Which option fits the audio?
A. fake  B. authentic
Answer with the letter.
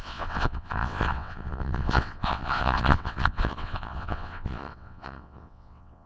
A